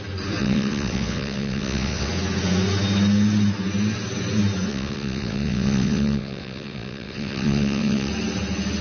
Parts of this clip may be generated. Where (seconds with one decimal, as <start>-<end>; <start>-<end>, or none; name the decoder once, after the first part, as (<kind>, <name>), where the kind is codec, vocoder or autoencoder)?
0.4-2.1 (vocoder, WaveNeXt); 4.7-8.1